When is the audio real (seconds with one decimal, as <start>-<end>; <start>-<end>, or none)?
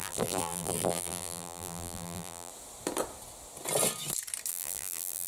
2.5-4.5